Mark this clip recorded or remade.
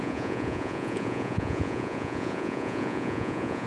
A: remade